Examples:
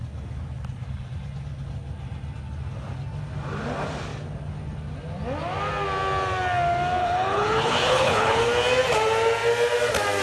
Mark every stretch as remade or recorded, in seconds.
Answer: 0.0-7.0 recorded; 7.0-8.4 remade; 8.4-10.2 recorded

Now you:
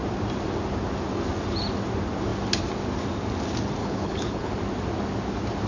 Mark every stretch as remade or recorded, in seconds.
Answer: 0.0-3.8 recorded; 3.8-4.5 remade; 4.5-5.7 recorded

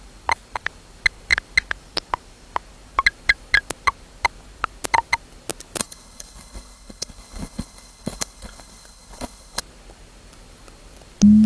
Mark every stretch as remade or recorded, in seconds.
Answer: 0.0-5.8 recorded; 5.8-9.6 remade; 9.6-11.5 recorded

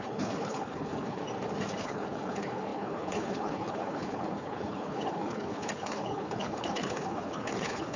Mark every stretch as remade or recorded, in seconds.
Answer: 0.0-1.2 remade; 1.2-1.8 recorded; 1.8-8.0 remade

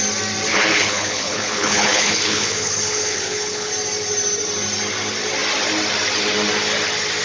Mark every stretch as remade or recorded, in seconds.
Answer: 0.0-0.5 recorded; 0.5-3.7 remade; 3.7-7.2 recorded

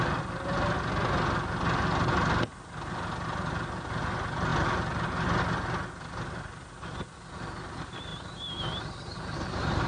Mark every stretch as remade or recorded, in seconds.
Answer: 0.0-9.9 recorded